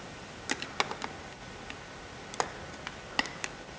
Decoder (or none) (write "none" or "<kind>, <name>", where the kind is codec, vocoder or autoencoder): none